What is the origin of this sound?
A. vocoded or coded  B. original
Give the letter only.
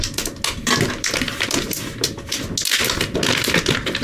B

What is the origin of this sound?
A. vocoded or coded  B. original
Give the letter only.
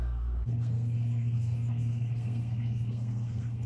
A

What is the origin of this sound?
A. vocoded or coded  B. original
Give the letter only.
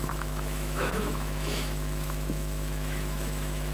A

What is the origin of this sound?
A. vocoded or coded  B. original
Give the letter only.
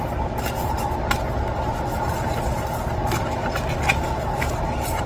B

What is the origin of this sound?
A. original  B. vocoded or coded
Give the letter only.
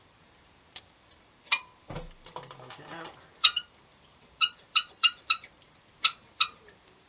B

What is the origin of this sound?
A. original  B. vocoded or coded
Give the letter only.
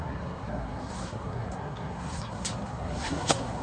B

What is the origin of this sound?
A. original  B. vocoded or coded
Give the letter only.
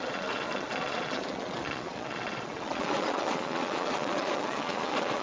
B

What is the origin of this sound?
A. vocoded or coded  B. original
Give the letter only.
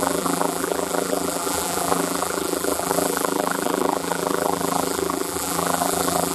A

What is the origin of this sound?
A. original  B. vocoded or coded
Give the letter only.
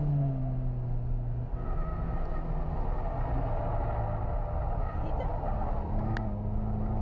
A